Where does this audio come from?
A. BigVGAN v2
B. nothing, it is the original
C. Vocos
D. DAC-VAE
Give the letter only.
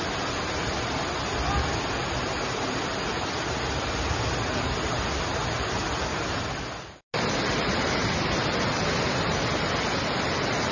B